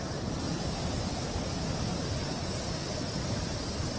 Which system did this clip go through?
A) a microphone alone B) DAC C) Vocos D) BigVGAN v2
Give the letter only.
D